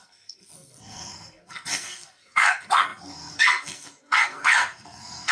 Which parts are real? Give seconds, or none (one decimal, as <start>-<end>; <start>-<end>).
none